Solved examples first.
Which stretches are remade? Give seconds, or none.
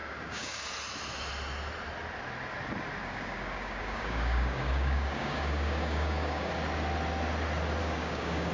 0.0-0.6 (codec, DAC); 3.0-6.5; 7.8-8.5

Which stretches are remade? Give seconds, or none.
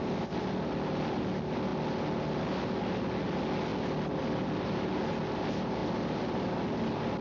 none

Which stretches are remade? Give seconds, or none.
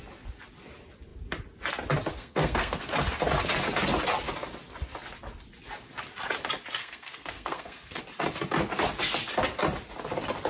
2.1-2.9 (codec, SNAC); 6.8-8.0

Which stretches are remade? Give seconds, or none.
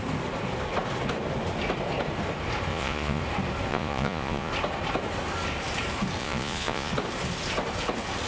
2.7-3.2 (vocoder, Vocos); 3.7-4.5; 6.2-6.9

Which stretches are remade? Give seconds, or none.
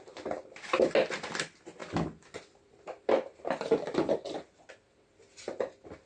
none